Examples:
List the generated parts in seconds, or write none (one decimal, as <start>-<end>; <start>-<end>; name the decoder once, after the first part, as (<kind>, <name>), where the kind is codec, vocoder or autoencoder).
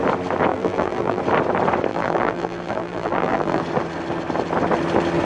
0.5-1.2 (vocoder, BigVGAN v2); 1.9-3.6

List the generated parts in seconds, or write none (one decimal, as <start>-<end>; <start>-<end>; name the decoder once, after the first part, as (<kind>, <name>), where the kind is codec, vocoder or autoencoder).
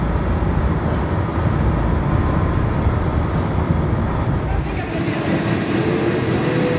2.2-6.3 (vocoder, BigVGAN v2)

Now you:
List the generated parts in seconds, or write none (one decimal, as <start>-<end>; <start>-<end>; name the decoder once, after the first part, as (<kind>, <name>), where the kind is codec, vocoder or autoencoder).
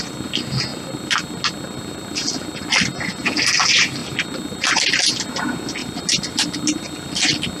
4.0-4.7 (vocoder, BigVGAN v2); 5.8-7.6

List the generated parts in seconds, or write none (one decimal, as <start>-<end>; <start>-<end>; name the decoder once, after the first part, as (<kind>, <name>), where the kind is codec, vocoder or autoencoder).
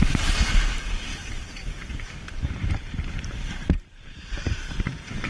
0.0-1.1 (vocoder, BigVGAN v2); 2.5-5.3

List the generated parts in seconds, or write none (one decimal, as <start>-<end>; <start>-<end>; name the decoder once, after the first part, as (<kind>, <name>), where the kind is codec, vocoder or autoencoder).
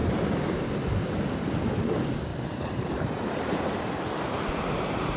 2.3-3.9 (vocoder, BigVGAN v2)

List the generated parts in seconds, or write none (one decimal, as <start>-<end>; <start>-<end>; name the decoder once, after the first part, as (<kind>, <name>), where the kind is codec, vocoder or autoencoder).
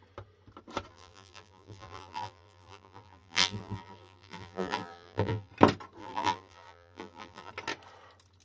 0.9-5.5 (vocoder, BigVGAN v2); 6.0-7.5